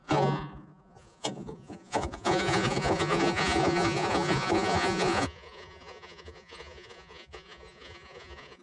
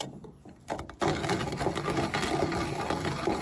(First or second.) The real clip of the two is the second